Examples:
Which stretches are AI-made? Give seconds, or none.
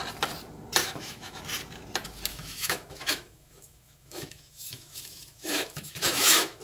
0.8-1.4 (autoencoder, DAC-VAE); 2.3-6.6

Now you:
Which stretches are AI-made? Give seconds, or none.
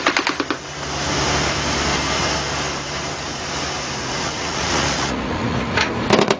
4.0-5.9 (vocoder, Vocos)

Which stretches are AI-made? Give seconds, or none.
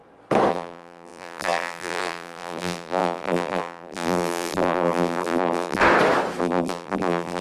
0.5-5.8 (vocoder, BigVGAN v2); 6.4-7.4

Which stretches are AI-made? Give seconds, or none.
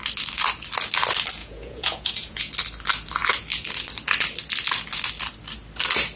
1.4-2.4 (vocoder, Vocos)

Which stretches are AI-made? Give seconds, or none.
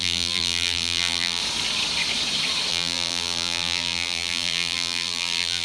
0.0-1.4 (vocoder, BigVGAN v2); 2.7-5.6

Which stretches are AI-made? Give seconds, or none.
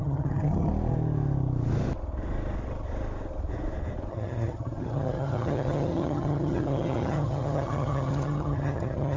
0.0-0.7 (vocoder, HiFi-GAN); 4.1-9.2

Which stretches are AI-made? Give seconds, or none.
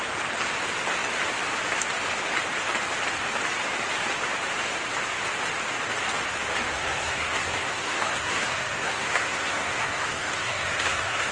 6.7-11.3 (codec, SNAC)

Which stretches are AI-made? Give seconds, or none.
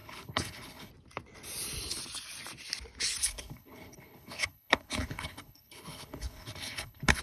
0.0-0.9 (codec, HILCodec); 3.2-7.2